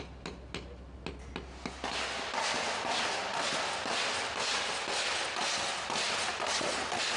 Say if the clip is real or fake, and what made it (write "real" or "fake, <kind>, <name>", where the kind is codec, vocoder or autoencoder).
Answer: real